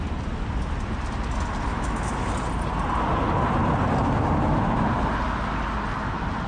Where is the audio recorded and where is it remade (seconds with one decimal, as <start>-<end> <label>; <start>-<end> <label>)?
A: 0.0-1.7 recorded; 1.7-2.3 remade; 2.3-6.5 recorded